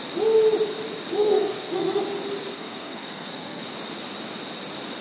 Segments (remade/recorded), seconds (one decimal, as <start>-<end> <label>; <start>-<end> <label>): 0.0-1.2 recorded; 1.2-2.0 remade; 2.0-2.5 recorded; 2.5-3.6 remade; 3.6-5.0 recorded